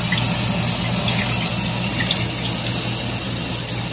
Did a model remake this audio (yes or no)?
no